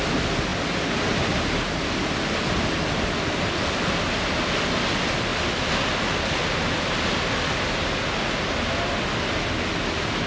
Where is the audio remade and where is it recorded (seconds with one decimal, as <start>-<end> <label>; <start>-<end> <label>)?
0.0-10.3 recorded